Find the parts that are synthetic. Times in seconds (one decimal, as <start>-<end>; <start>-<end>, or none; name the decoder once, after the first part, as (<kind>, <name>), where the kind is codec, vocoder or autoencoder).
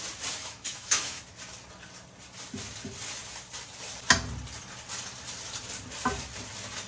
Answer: 0.4-1.2 (autoencoder, DAC-VAE)